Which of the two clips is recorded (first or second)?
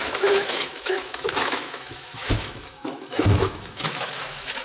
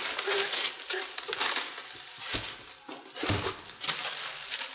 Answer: second